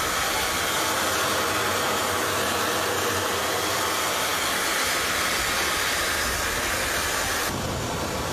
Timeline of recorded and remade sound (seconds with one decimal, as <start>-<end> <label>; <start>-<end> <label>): 0.0-8.3 recorded